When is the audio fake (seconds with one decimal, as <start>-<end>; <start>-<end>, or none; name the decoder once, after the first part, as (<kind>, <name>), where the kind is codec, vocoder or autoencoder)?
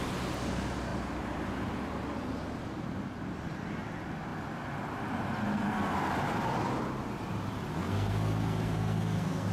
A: 5.5-6.1 (codec, SNAC); 7.7-9.5